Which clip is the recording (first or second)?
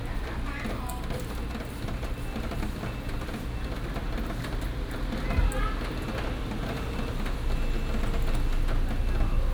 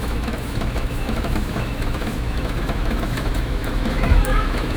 first